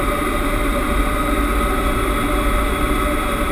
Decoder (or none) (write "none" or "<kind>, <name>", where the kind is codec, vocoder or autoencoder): vocoder, BigVGAN v2